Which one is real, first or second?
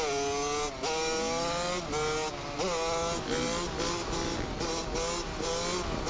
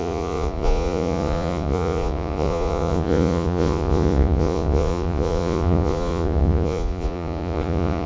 first